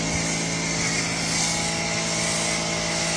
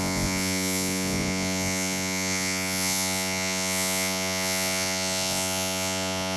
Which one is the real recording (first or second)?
first